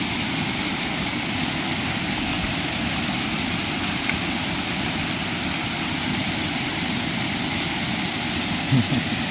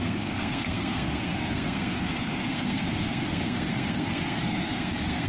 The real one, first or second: first